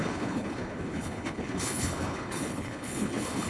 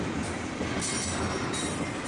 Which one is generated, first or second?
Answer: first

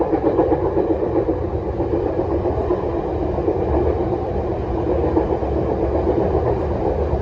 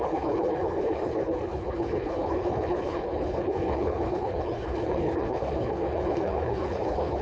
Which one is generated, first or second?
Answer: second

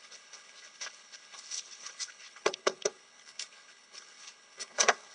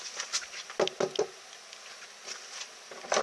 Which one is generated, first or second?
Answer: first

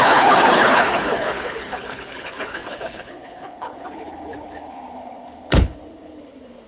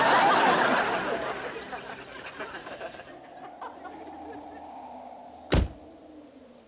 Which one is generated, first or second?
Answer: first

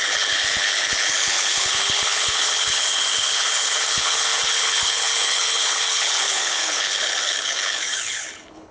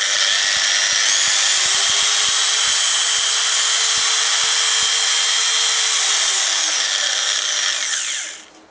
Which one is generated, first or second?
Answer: first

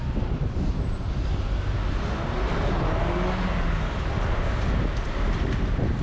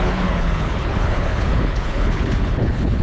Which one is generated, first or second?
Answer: second